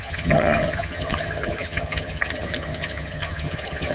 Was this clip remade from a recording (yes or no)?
yes